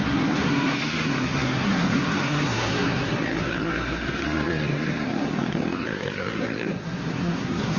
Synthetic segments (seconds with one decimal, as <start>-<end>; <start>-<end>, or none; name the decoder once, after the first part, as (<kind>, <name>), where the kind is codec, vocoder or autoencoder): 0.0-7.8 (codec, SNAC)